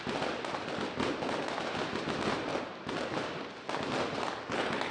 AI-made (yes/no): no